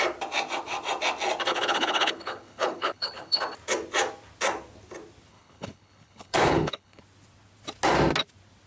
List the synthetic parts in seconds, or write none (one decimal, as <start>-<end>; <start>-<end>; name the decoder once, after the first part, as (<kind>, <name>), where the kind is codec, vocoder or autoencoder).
1.5-3.4 (codec, HILCodec); 5.3-7.0